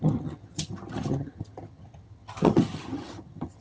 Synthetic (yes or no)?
yes